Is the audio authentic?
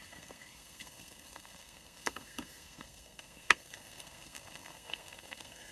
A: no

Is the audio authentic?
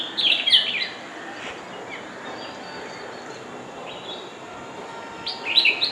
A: yes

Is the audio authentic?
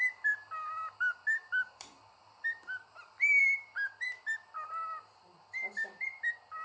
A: no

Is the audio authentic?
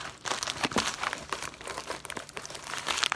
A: no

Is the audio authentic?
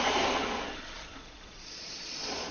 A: no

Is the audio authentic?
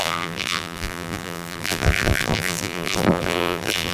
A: no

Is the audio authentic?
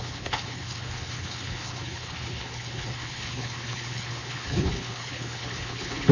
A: no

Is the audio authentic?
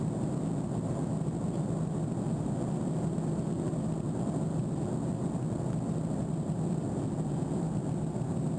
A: yes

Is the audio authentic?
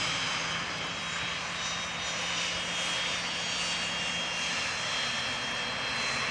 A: yes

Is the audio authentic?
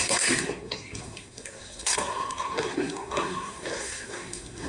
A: no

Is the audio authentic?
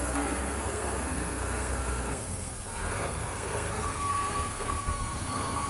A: no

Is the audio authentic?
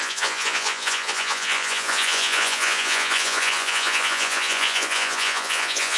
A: no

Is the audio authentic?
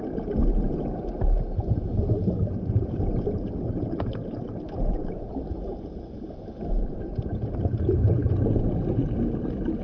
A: yes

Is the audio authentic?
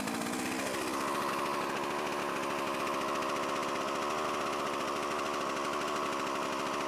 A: yes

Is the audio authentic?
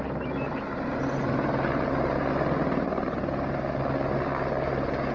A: yes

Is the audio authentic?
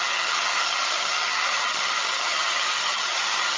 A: no